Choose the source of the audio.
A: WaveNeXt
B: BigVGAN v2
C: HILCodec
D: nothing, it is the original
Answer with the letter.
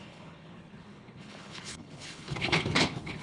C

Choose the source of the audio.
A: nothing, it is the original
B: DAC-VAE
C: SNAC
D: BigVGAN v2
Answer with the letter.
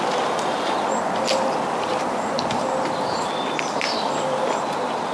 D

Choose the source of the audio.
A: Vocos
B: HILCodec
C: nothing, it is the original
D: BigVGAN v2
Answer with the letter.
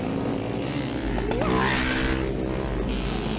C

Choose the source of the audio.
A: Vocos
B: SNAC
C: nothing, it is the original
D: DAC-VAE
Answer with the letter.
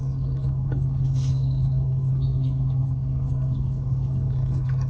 B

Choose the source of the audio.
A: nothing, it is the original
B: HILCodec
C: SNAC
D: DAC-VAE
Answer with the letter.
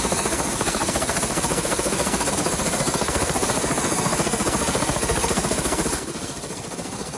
C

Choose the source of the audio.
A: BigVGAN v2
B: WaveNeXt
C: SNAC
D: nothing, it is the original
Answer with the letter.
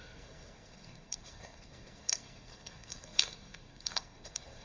C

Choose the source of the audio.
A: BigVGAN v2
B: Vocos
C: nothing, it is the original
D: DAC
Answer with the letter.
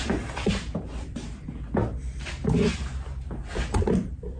C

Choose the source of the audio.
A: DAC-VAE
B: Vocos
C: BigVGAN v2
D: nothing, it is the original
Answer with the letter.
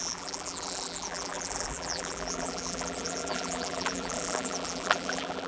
C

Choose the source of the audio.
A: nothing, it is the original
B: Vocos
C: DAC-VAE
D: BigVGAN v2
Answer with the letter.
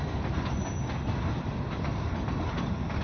A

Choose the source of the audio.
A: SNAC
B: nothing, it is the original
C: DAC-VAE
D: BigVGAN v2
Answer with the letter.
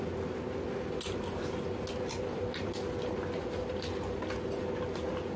B